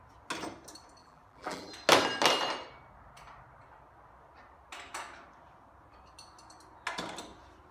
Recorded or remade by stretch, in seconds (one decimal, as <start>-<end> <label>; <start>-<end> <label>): 0.0-1.0 recorded; 1.0-1.7 remade; 1.7-7.7 recorded